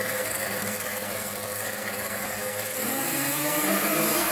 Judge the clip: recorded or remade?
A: remade